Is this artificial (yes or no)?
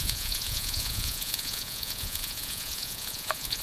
yes